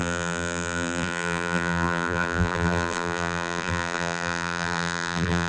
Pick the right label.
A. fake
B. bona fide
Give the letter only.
A